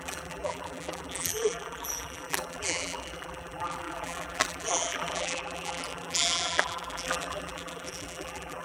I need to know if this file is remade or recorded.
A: remade